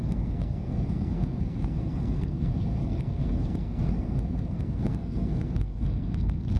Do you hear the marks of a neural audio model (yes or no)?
yes